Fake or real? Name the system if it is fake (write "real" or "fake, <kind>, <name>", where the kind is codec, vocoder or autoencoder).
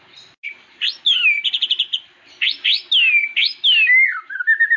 real